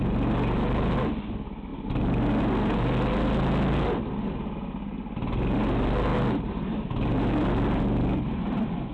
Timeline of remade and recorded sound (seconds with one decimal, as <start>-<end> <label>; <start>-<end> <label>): 0.0-8.9 recorded